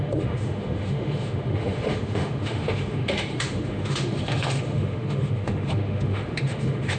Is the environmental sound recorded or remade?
remade